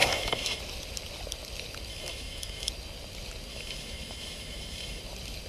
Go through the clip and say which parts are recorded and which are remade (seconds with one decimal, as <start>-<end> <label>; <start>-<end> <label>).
0.0-0.6 remade; 0.6-1.9 recorded; 1.9-2.7 remade; 2.7-3.5 recorded; 3.5-5.0 remade; 5.0-5.5 recorded